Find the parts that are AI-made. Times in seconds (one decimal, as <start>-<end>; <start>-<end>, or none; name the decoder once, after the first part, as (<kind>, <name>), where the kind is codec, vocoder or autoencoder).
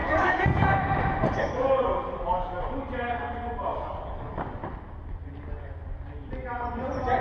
0.0-0.8 (codec, DAC); 1.5-2.8; 3.7-4.6